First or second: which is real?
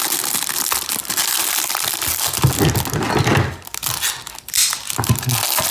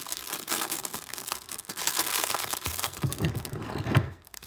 first